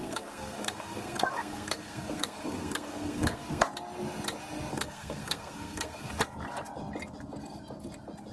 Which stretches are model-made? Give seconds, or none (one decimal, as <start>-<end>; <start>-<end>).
0.0-3.6; 4.7-6.1